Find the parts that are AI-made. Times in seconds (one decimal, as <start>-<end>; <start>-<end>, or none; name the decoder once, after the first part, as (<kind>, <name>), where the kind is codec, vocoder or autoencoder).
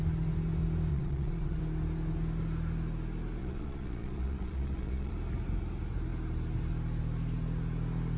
0.9-1.6 (vocoder, Vocos); 3.4-5.1